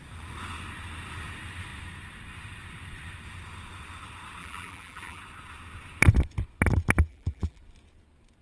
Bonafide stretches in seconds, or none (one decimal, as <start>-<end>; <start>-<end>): 0.0-4.4; 5.2-7.1; 7.6-8.4